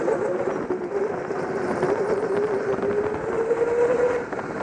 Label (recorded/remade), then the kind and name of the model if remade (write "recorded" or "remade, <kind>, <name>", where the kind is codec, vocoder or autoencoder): recorded